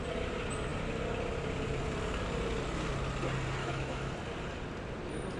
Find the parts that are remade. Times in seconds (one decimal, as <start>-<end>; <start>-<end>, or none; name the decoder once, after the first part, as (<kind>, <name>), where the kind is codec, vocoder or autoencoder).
3.6-4.1 (autoencoder, DAC-VAE)